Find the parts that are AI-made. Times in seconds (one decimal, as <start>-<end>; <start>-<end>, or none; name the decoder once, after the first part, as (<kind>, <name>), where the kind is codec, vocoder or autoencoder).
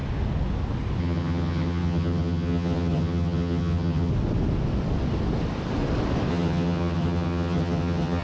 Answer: 1.0-4.1 (vocoder, HiFi-GAN); 6.3-8.2